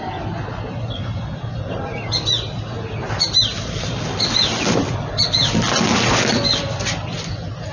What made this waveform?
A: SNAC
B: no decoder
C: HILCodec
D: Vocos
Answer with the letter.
B